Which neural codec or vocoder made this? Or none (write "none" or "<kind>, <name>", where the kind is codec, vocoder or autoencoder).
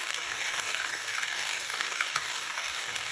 codec, DAC